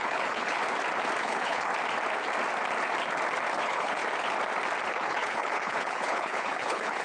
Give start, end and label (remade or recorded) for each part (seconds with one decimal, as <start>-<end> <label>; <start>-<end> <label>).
0.0-0.6 remade; 0.6-1.2 recorded; 1.2-1.7 remade; 1.7-3.6 recorded; 3.6-4.0 remade; 4.0-4.9 recorded; 4.9-7.0 remade